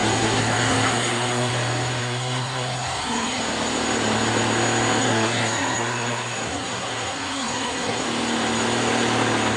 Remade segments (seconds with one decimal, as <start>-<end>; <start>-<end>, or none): 0.0-1.5; 2.0-3.4; 5.0-8.0